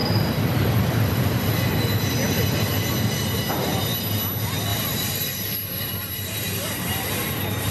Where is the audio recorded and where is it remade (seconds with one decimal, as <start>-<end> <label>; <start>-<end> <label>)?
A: 0.0-1.6 remade; 1.6-4.7 recorded; 4.7-7.7 remade

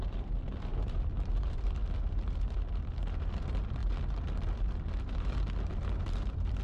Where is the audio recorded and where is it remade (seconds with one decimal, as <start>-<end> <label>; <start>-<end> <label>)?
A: 0.0-1.8 remade; 1.8-3.3 recorded; 3.3-3.8 remade; 3.8-5.0 recorded; 5.0-6.6 remade

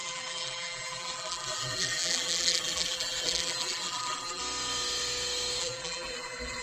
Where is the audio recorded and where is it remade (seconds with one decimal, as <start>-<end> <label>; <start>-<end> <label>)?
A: 0.0-4.4 remade; 4.4-5.6 recorded; 5.6-6.6 remade

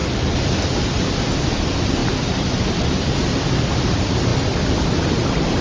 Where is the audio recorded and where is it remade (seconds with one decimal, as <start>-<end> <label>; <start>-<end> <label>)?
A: 0.0-2.0 remade; 2.0-3.7 recorded; 3.7-4.3 remade; 4.3-5.6 recorded

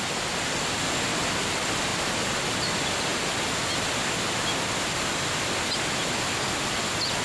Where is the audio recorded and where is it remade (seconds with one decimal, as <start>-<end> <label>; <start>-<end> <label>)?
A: 0.0-1.9 recorded; 1.9-2.7 remade; 2.7-7.2 recorded

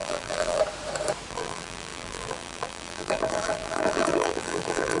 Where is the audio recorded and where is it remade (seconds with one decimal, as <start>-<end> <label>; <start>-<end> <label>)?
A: 0.0-0.6 remade; 0.6-1.3 recorded; 1.3-5.0 remade

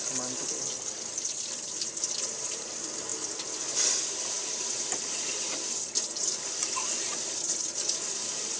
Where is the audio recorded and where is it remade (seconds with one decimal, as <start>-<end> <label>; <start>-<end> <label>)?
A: 0.0-3.1 remade; 3.1-6.4 recorded; 6.4-8.6 remade

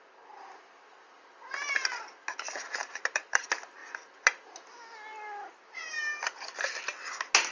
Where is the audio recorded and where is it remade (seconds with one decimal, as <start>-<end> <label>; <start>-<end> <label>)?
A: 0.0-2.8 recorded; 2.8-3.4 remade; 3.4-7.5 recorded